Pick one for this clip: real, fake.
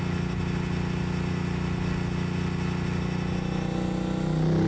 real